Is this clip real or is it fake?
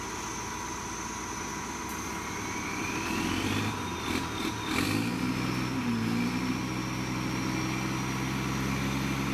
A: real